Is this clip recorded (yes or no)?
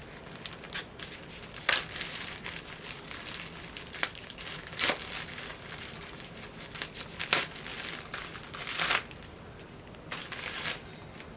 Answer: yes